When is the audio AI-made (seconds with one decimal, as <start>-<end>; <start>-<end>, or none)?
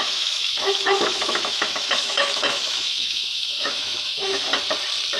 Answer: 0.0-4.5